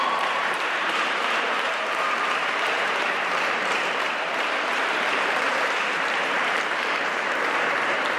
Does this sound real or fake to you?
fake